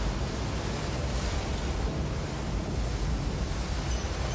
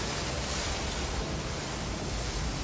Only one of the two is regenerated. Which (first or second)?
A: second